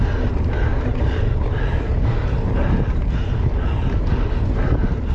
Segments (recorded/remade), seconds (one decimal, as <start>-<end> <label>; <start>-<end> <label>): 0.0-5.1 recorded